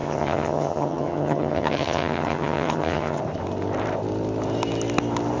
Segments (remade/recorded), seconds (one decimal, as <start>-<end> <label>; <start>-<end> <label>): 0.0-3.2 remade; 3.2-5.4 recorded